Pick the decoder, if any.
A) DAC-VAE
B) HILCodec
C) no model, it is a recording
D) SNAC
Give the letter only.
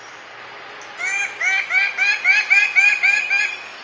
C